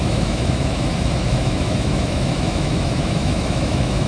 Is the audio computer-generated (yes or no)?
yes